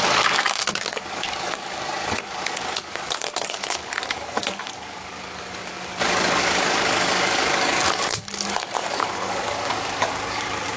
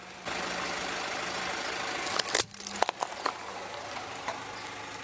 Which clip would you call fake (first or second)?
first